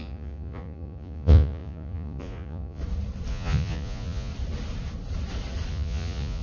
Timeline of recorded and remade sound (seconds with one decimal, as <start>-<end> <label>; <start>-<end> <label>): 0.0-2.8 remade; 2.8-3.3 recorded; 3.3-4.3 remade; 4.3-5.7 recorded; 5.7-6.4 remade